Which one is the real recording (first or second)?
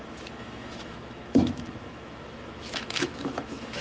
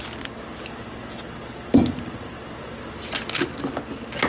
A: second